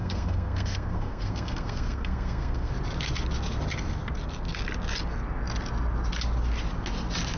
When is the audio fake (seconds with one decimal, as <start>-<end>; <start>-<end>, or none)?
0.0-2.7